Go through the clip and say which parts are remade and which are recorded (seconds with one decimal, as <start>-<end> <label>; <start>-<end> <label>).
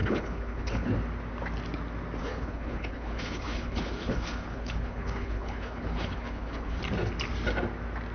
0.0-0.9 remade; 0.9-2.2 recorded; 2.2-6.8 remade; 6.8-8.1 recorded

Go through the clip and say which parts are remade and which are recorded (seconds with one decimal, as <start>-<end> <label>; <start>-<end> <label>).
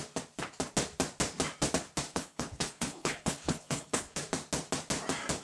0.0-2.1 recorded; 2.1-4.2 remade; 4.2-5.4 recorded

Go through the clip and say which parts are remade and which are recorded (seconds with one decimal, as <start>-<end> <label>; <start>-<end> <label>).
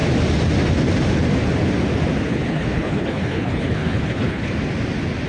0.0-2.3 recorded; 2.3-4.5 remade; 4.5-5.3 recorded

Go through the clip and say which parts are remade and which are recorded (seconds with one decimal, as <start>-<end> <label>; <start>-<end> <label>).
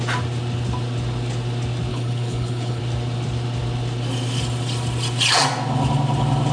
0.0-1.9 recorded; 1.9-2.8 remade; 2.8-6.5 recorded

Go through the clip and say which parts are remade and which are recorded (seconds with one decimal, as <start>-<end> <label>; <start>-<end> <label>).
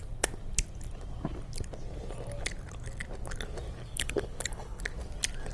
0.0-3.9 recorded; 3.9-4.8 remade; 4.8-5.5 recorded